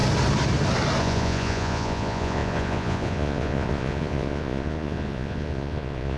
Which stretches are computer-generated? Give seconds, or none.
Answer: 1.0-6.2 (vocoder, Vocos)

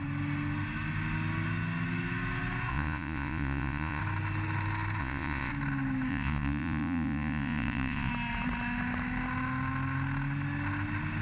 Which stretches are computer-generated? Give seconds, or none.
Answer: 2.7-4.0 (vocoder, Vocos); 5.0-5.5; 6.1-8.1

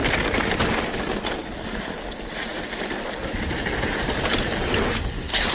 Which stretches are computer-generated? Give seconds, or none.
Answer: none

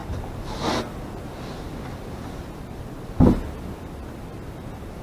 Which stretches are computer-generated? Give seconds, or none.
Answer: none